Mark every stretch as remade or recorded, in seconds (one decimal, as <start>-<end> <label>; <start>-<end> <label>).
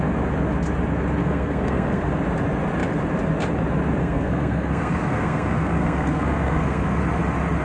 0.0-1.2 recorded; 1.2-2.1 remade; 2.1-4.0 recorded; 4.0-7.0 remade; 7.0-7.6 recorded